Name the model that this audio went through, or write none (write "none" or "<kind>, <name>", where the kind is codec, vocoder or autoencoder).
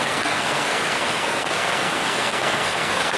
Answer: codec, SNAC